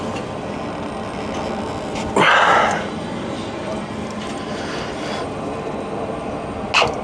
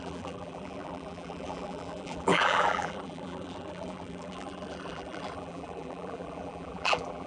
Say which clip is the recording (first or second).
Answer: first